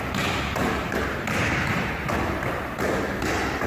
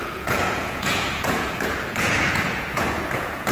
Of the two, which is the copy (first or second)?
second